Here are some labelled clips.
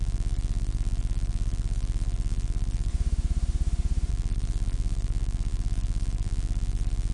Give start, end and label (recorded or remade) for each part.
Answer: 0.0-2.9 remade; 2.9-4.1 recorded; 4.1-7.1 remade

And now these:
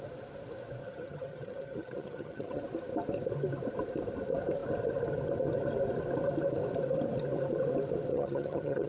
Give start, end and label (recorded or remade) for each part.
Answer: 0.0-0.8 recorded; 0.8-2.6 remade; 2.6-8.1 recorded; 8.1-8.9 remade

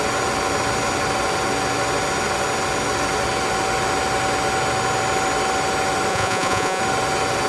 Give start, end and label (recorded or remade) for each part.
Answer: 0.0-6.1 recorded; 6.1-6.8 remade; 6.8-7.5 recorded

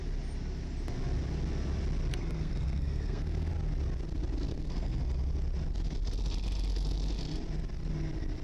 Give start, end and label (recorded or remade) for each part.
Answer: 0.0-2.1 recorded; 2.1-3.5 remade; 3.5-4.5 recorded; 4.5-5.0 remade; 5.0-8.4 recorded

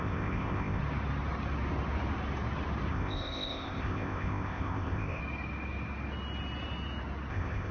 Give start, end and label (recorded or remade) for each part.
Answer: 0.0-0.8 remade; 0.8-2.9 recorded; 2.9-5.2 remade; 5.2-7.3 recorded; 7.3-7.7 remade

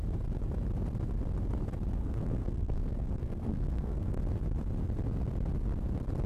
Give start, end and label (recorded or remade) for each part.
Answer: 0.0-2.0 recorded; 2.0-4.2 remade; 4.2-6.3 recorded

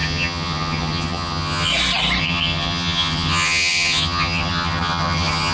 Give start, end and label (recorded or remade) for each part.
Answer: 0.0-1.7 remade; 1.7-2.2 recorded; 2.2-5.5 remade